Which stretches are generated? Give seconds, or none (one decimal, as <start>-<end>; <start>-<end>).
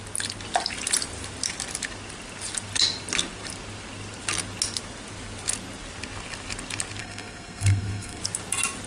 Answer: 7.0-8.2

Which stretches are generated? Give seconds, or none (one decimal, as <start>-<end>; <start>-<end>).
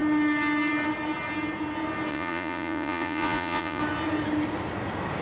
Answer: 2.1-3.8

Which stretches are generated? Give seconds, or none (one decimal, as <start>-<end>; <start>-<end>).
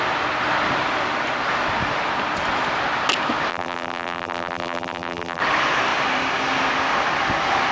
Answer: 3.5-5.4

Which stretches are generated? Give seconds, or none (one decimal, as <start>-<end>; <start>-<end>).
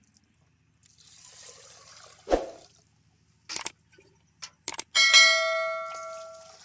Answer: none